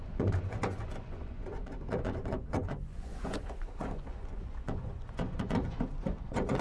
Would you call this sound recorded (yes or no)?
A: no